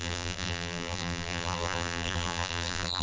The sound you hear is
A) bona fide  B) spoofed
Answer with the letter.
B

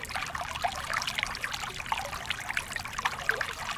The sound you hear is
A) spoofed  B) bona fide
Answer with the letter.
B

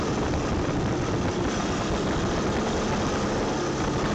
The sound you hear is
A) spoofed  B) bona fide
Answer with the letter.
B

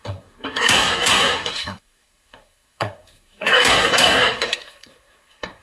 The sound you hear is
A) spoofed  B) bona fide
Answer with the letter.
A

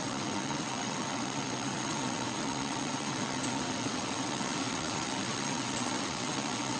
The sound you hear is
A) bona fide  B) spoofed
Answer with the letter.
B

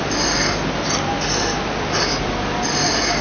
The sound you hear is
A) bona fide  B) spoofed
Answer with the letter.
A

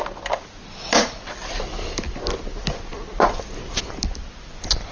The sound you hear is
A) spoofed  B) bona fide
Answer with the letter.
B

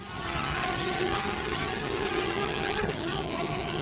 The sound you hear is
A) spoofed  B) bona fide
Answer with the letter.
A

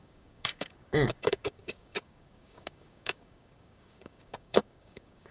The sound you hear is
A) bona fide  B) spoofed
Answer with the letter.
B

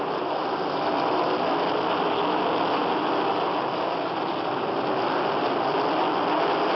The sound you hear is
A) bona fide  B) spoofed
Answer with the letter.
A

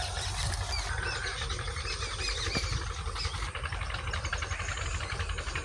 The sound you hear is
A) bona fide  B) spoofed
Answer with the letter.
B